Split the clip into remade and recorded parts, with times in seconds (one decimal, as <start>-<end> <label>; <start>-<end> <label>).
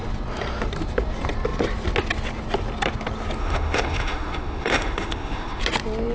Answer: 0.0-3.4 recorded; 3.4-5.6 remade; 5.6-6.1 recorded